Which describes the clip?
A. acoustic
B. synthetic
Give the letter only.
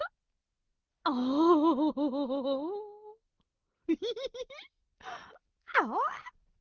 A